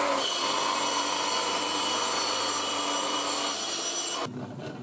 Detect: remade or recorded recorded